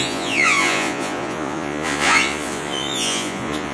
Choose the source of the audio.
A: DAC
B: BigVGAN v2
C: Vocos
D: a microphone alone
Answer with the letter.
C